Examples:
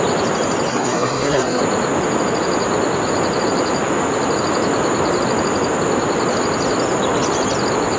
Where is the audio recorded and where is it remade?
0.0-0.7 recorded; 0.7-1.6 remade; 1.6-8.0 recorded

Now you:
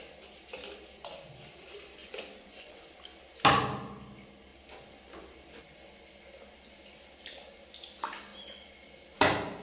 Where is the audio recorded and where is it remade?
0.0-2.0 recorded; 2.0-2.8 remade; 2.8-9.6 recorded

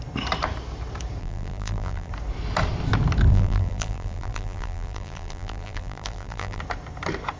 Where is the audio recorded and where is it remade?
0.0-1.2 recorded; 1.2-2.1 remade; 2.1-3.3 recorded; 3.3-6.6 remade; 6.6-7.4 recorded

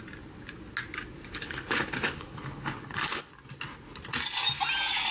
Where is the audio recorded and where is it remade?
0.0-1.3 recorded; 1.3-3.3 remade; 3.3-5.1 recorded

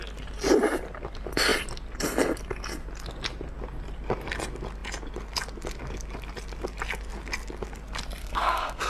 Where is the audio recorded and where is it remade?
0.0-8.2 recorded; 8.2-8.9 remade

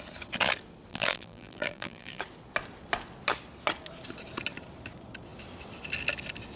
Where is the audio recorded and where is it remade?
0.0-0.9 recorded; 0.9-2.2 remade; 2.2-6.6 recorded

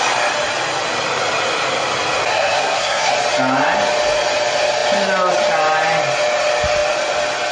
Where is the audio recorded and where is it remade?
0.0-2.3 recorded; 2.3-3.1 remade; 3.1-7.5 recorded

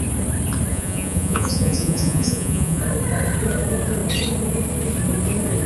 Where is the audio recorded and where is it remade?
0.0-0.7 recorded; 0.7-2.8 remade; 2.8-5.7 recorded